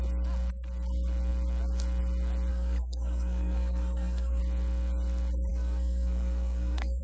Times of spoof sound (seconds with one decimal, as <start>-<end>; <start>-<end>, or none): 2.5-4.4; 5.5-7.0